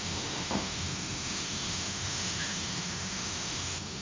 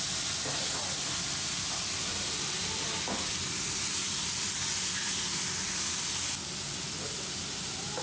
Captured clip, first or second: second